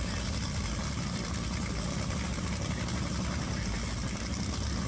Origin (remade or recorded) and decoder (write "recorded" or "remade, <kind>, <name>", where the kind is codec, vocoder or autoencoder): recorded